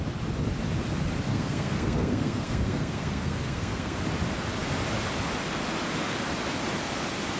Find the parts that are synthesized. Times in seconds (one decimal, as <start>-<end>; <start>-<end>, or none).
1.3-4.0